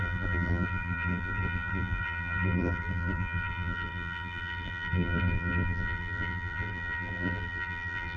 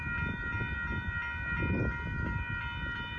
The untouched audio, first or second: second